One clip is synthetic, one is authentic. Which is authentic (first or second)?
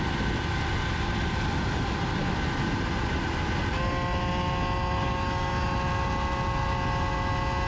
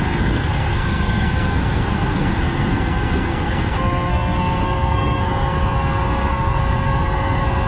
first